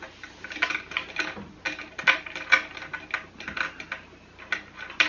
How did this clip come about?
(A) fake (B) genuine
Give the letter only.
B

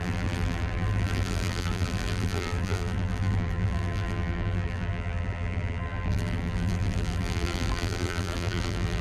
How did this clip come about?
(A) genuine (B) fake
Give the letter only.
B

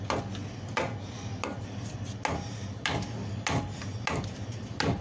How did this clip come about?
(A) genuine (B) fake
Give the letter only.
A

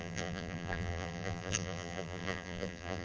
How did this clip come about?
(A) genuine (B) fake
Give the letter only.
B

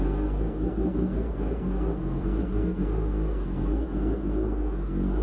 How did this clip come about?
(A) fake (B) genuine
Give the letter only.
A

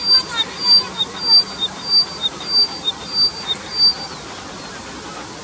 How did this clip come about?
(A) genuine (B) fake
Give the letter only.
A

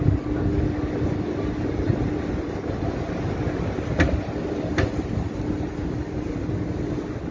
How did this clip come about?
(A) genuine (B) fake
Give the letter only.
A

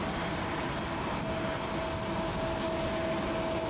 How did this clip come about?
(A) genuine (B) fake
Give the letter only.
A